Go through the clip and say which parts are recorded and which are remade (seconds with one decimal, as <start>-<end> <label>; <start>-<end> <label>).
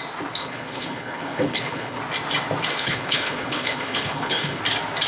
0.0-0.4 recorded; 0.4-2.0 remade; 2.0-2.7 recorded; 2.7-4.6 remade; 4.6-5.1 recorded